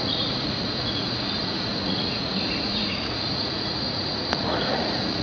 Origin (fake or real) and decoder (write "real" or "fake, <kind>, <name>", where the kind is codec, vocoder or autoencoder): fake, vocoder, Vocos